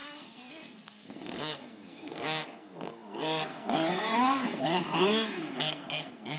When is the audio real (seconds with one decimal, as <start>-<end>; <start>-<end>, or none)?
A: none